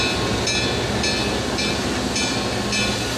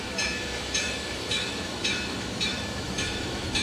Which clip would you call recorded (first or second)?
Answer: first